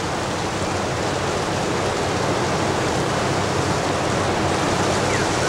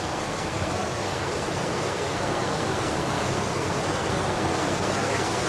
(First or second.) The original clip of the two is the first